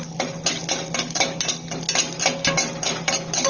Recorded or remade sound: recorded